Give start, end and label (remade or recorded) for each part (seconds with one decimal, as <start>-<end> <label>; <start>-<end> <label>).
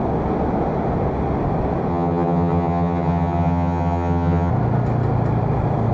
0.0-1.9 recorded; 1.9-4.5 remade; 4.5-5.9 recorded